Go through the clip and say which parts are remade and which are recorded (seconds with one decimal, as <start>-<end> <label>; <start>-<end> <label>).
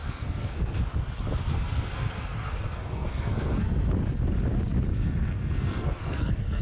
0.0-0.8 remade; 0.8-1.5 recorded; 1.5-3.9 remade; 3.9-4.9 recorded; 4.9-6.6 remade